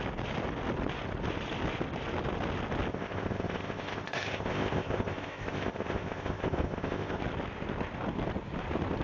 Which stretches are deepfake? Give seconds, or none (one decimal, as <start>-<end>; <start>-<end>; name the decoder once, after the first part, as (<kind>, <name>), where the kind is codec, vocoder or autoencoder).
2.9-7.2 (codec, ZipCodec)